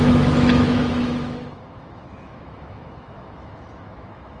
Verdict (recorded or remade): remade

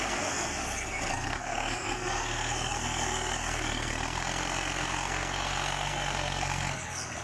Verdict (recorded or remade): remade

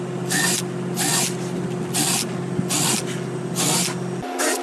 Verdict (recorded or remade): recorded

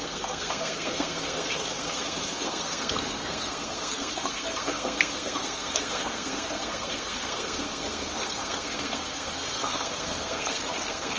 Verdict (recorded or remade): remade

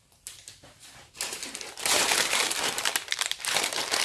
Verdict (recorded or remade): remade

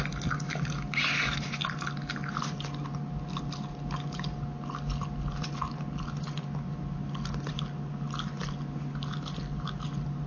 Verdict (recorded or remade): recorded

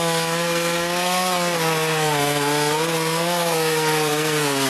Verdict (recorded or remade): remade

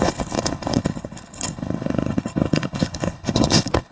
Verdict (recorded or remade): remade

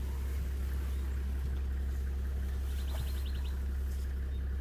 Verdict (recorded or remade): recorded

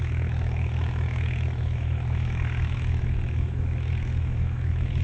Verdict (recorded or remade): remade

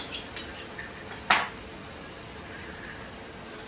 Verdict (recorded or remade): recorded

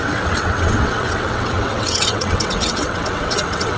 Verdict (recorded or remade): remade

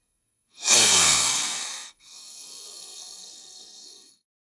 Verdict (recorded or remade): remade